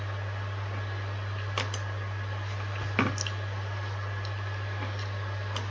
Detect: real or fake real